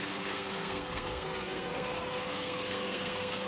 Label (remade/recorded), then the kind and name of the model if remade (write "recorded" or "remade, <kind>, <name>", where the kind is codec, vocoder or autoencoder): remade, codec, SNAC